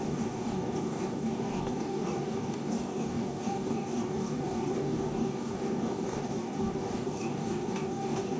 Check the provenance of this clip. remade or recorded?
remade